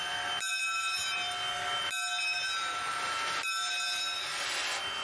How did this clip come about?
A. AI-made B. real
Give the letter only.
B